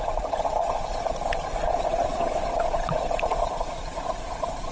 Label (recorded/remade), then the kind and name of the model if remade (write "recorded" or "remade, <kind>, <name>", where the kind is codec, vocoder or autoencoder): remade, vocoder, Vocos